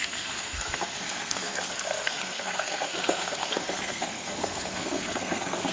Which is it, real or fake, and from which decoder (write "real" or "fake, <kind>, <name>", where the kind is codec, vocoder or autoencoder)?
fake, codec, SNAC